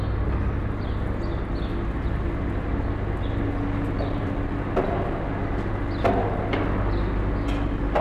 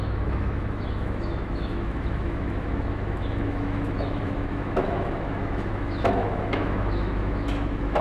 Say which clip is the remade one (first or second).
second